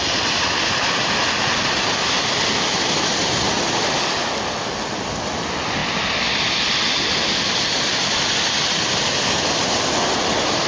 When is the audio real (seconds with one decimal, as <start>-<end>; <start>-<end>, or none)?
0.0-10.7